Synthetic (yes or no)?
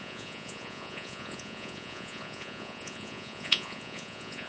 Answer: yes